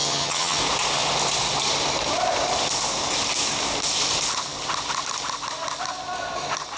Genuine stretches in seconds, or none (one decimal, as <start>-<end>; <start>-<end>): 0.6-6.8